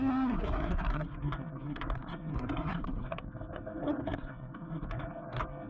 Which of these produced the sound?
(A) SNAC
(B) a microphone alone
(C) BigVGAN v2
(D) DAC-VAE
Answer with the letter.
A